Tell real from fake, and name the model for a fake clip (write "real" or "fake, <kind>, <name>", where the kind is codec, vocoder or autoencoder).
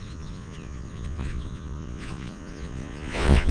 fake, vocoder, Vocos